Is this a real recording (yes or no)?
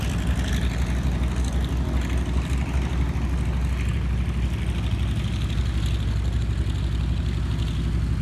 yes